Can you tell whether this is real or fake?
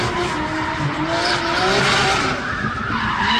real